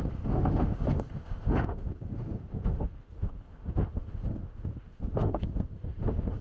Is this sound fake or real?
fake